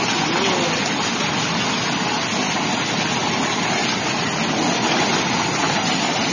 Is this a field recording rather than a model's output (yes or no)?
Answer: yes